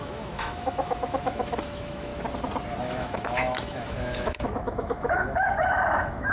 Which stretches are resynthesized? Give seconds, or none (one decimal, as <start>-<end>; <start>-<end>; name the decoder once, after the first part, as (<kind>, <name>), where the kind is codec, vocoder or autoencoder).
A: 0.0-2.1 (autoencoder, DAC-VAE); 2.8-6.3